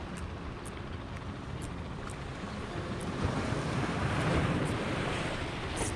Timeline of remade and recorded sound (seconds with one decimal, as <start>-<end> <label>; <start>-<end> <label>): 0.0-3.0 recorded; 3.0-5.3 remade; 5.3-6.0 recorded